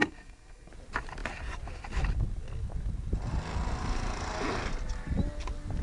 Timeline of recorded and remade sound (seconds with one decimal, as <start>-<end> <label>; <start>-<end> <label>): 0.0-0.7 remade; 0.7-5.8 recorded